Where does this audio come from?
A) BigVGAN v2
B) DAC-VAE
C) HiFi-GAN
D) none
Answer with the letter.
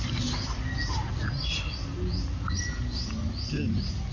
D